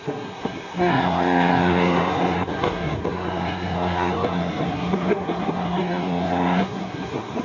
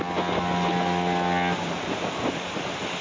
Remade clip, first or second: first